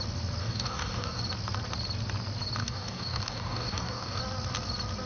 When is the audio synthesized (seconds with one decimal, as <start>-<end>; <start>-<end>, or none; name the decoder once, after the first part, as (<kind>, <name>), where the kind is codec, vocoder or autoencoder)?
0.4-1.2 (codec, DAC); 2.6-4.2